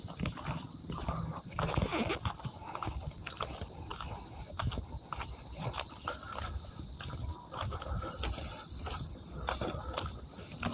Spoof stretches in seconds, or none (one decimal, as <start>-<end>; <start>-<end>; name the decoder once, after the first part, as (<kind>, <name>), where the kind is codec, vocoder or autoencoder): none